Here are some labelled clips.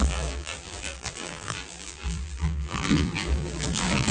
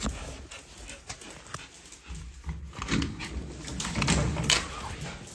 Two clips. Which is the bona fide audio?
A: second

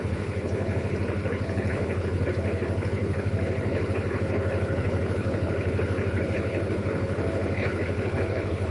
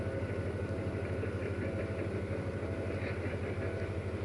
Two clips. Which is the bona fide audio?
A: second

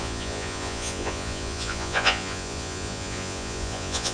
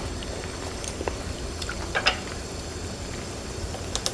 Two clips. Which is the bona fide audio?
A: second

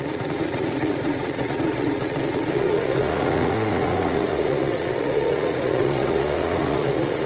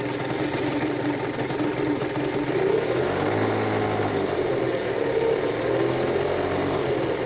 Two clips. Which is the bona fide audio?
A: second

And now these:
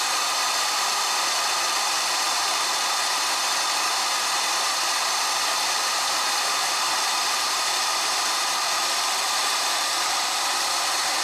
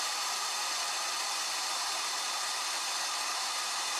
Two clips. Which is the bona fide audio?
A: second